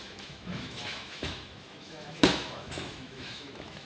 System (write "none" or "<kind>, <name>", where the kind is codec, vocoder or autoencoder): autoencoder, DAC-VAE